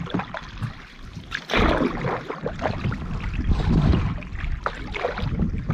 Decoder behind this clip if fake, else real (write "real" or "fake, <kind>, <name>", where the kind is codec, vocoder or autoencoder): real